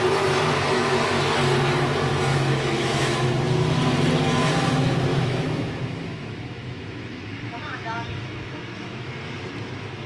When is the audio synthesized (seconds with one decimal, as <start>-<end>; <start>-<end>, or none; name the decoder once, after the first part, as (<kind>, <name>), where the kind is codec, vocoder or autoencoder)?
2.3-3.3 (autoencoder, DAC-VAE); 5.1-9.1